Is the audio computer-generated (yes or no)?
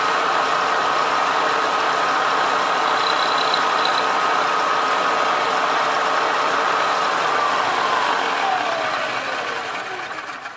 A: no